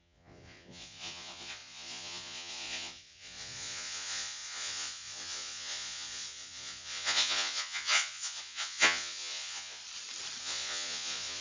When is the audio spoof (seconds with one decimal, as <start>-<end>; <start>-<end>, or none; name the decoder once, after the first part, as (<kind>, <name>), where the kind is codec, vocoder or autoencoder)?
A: 0.0-9.8 (vocoder, Vocos); 10.4-11.4